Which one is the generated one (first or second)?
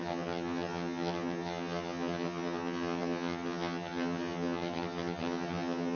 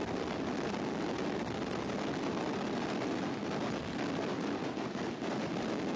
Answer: first